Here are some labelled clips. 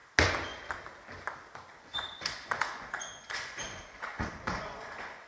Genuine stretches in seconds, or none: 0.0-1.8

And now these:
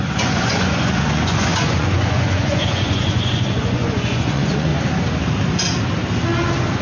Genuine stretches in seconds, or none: 4.7-6.8

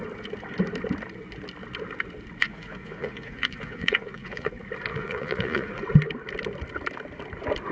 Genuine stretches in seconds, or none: 0.0-2.4; 4.5-4.9; 5.8-7.7

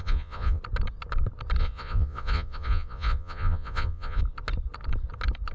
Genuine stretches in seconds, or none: 0.6-1.6; 4.2-5.5

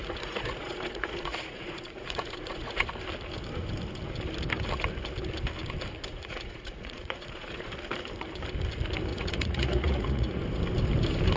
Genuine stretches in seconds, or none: 2.9-6.1; 7.7-9.1; 10.4-11.4

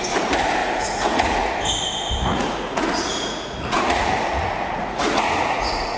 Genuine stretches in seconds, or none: 0.0-0.6; 1.5-2.2